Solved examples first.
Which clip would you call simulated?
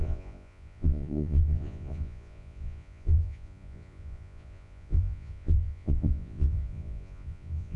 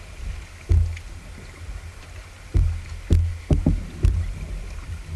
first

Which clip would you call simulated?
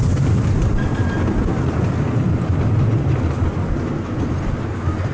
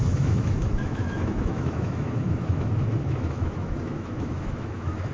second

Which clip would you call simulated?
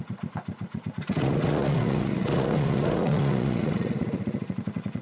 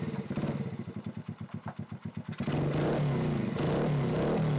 first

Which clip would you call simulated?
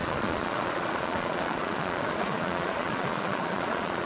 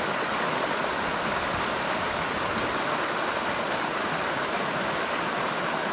first